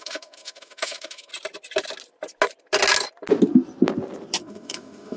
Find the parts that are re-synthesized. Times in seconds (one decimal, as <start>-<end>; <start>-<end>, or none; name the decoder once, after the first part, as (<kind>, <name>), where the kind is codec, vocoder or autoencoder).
0.0-1.3 (autoencoder, DAC-VAE); 4.4-5.2